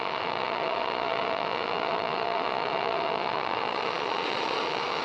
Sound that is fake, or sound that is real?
fake